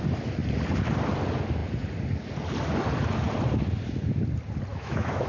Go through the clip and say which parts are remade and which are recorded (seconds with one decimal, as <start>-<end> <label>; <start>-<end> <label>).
0.0-4.7 recorded; 4.7-5.3 remade